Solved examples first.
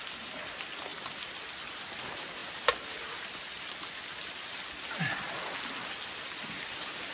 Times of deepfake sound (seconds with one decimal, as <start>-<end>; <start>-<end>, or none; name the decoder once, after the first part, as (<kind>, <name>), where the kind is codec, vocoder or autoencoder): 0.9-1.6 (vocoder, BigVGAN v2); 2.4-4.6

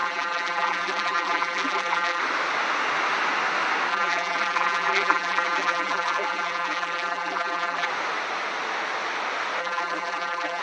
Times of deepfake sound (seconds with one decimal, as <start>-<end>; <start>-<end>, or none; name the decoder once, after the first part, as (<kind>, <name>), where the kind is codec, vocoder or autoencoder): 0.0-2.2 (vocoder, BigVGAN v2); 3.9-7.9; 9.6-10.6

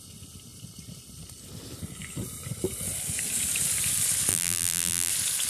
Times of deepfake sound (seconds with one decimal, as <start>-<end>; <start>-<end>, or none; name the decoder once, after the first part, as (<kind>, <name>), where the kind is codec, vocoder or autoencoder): 4.3-5.1 (vocoder, BigVGAN v2)

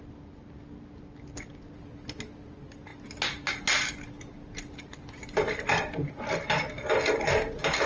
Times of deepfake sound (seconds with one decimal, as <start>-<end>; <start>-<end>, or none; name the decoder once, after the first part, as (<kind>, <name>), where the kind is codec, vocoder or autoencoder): none

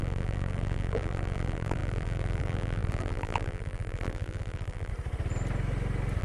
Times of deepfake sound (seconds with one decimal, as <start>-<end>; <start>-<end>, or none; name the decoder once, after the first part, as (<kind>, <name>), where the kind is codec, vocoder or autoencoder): 0.0-4.9 (vocoder, BigVGAN v2)